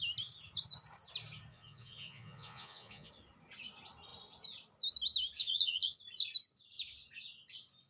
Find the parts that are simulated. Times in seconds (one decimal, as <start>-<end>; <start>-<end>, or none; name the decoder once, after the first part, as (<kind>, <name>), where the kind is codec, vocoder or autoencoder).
1.5-3.1 (vocoder, Vocos); 5.4-6.0